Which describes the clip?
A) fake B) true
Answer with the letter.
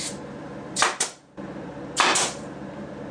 A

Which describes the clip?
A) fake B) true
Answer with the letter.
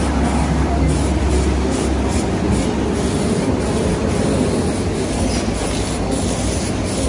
B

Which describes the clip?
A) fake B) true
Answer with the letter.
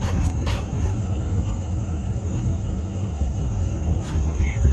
A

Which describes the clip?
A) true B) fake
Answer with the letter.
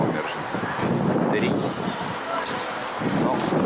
A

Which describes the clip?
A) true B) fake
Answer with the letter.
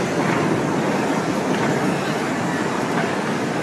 A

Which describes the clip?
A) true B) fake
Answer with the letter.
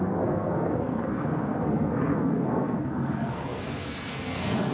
B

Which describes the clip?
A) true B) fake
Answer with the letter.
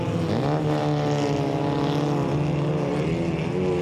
A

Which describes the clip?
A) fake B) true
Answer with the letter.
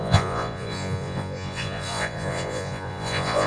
A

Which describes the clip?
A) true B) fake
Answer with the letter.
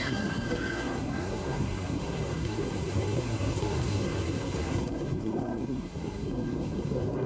B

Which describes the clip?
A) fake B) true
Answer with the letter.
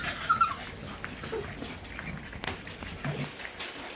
B